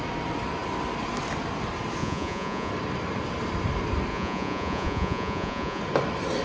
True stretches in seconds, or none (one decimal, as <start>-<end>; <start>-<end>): 0.0-2.0; 2.7-4.1; 5.8-6.4